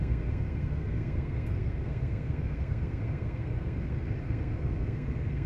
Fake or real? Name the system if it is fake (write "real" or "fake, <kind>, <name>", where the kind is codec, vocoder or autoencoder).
fake, codec, SNAC